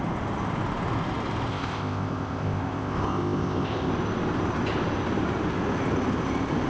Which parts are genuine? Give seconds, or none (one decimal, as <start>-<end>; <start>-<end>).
0.0-1.5; 3.9-6.7